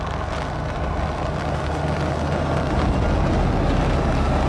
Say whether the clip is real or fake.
real